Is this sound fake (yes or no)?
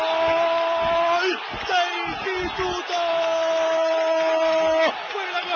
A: no